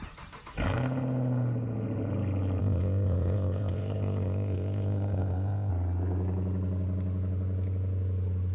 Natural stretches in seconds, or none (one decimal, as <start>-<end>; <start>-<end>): 0.0-2.6; 5.7-8.5